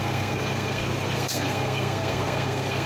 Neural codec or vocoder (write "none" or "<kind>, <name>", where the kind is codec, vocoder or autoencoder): codec, SNAC